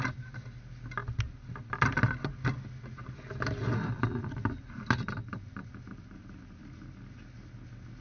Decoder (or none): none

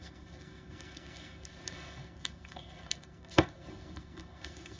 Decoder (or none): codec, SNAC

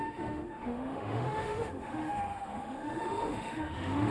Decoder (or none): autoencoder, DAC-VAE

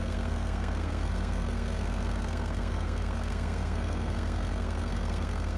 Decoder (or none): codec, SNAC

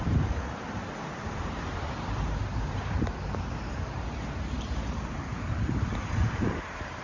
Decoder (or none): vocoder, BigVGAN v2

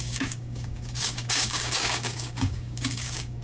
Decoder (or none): codec, DAC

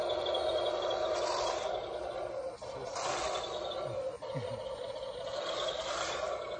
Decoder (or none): none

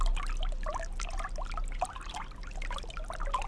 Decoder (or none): none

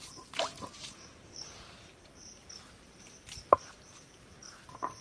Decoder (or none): vocoder, BigVGAN v2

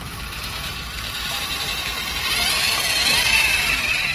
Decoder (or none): vocoder, BigVGAN v2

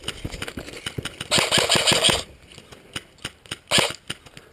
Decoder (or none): none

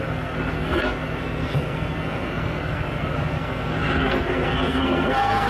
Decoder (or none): codec, SNAC